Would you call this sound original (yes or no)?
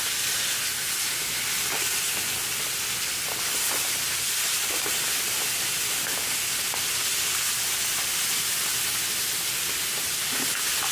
yes